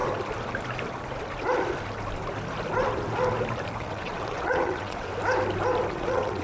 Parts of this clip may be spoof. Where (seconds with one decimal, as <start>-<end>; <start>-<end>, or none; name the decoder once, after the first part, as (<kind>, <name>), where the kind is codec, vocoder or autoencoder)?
3.8-5.1 (vocoder, WaveNeXt); 5.9-6.4